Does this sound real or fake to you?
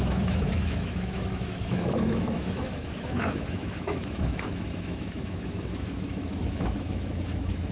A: fake